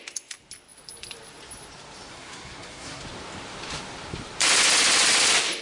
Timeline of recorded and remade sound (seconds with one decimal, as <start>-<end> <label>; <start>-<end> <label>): 0.0-2.1 recorded; 2.1-3.0 remade; 3.0-5.6 recorded